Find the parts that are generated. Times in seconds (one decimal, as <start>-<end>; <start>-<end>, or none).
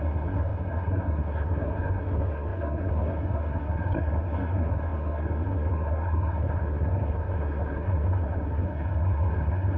0.0-9.8